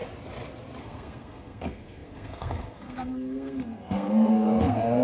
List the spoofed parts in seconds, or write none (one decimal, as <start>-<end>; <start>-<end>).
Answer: 0.8-5.0